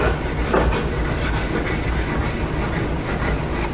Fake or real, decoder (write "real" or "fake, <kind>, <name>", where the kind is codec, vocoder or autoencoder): real